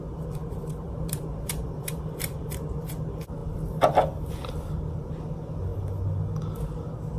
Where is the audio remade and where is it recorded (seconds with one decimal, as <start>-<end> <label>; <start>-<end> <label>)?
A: 0.0-0.4 recorded; 0.4-2.9 remade; 2.9-7.2 recorded